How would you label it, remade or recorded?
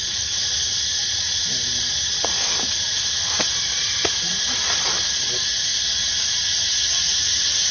recorded